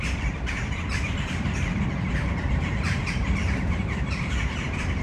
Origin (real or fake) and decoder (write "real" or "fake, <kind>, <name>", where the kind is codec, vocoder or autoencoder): fake, vocoder, BigVGAN v2